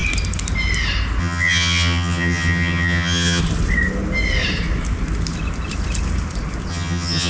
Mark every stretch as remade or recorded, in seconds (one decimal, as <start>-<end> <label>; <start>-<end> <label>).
0.0-1.2 recorded; 1.2-3.4 remade; 3.4-6.7 recorded; 6.7-7.3 remade